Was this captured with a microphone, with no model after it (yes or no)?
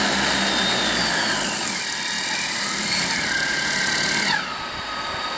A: yes